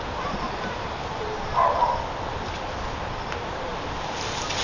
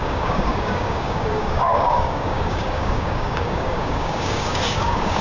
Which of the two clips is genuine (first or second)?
first